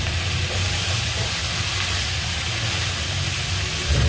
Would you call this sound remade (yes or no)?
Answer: no